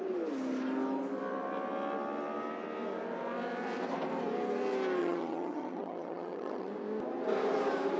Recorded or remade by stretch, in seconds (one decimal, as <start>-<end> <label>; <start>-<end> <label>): 0.0-5.0 recorded; 5.0-6.7 remade; 6.7-8.0 recorded